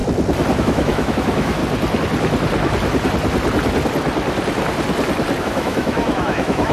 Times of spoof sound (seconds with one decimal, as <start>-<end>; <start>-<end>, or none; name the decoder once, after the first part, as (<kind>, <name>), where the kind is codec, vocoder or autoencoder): 0.6-1.6 (autoencoder, DAC-VAE); 5.4-6.7